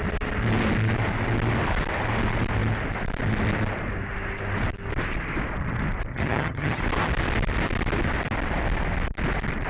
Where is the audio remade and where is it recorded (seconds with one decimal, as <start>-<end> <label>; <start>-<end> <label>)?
0.0-6.1 recorded; 6.1-6.8 remade; 6.8-9.7 recorded